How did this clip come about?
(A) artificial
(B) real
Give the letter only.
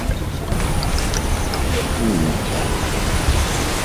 B